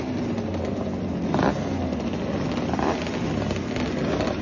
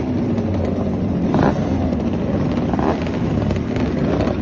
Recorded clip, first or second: first